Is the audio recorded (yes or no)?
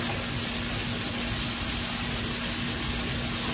yes